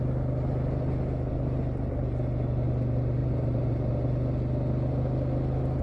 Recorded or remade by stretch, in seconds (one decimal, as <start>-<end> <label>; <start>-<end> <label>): 0.0-3.2 recorded; 3.2-3.9 remade; 3.9-5.8 recorded